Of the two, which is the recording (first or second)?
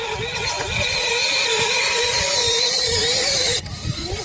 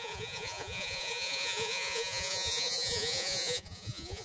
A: first